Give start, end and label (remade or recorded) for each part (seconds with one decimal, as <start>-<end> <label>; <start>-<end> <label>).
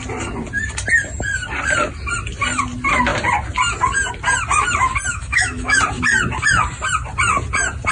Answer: 0.0-5.1 recorded; 5.1-5.8 remade; 5.8-7.9 recorded